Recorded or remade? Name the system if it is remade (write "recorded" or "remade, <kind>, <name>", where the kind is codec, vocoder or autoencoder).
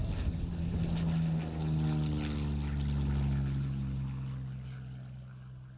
recorded